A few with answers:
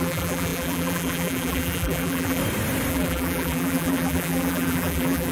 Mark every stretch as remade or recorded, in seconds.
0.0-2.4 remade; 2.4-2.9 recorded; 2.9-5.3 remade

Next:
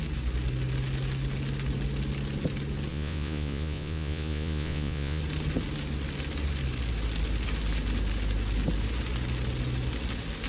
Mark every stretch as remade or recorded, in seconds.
0.0-2.9 recorded; 2.9-5.2 remade; 5.2-10.5 recorded

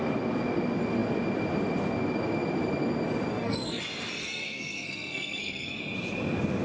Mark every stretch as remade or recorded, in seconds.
0.0-3.3 recorded; 3.3-3.8 remade; 3.8-4.2 recorded; 4.2-5.8 remade; 5.8-6.6 recorded